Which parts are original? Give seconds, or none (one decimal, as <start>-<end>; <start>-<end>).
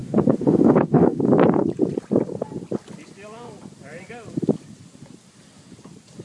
1.2-6.2